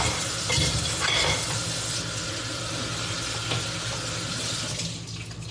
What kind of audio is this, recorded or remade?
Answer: recorded